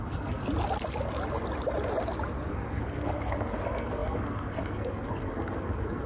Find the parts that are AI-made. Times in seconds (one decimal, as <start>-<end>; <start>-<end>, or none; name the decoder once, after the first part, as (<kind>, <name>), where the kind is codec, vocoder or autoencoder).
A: 0.0-0.4 (codec, SNAC); 2.5-6.1